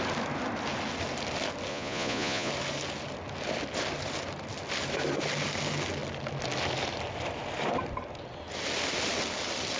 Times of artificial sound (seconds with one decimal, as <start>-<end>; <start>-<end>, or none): 1.7-2.5